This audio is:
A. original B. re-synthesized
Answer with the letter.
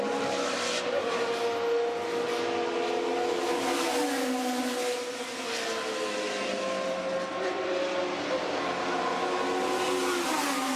A